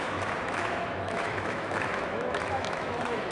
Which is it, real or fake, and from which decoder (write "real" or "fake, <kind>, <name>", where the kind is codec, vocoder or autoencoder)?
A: fake, autoencoder, DAC-VAE